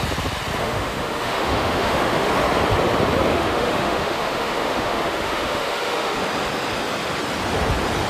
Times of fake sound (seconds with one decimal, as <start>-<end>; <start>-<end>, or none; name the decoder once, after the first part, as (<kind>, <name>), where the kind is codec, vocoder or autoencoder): 0.6-2.3 (autoencoder, DAC-VAE); 3.3-6.2

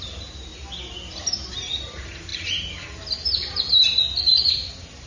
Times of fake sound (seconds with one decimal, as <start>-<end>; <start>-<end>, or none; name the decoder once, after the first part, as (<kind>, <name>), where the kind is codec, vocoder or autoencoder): none

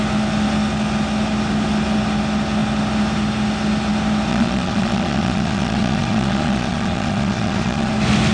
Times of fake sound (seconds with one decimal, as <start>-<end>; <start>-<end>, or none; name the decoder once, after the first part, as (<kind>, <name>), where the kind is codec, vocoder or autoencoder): 4.3-7.9 (vocoder, Vocos)

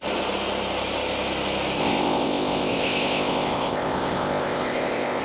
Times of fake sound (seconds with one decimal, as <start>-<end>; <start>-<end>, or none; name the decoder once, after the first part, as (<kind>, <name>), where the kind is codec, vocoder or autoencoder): 1.8-5.2 (codec, ZipCodec)